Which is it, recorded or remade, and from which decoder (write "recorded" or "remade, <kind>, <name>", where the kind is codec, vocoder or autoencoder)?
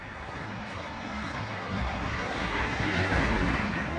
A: remade, codec, SNAC